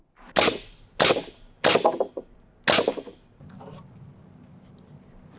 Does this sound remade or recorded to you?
recorded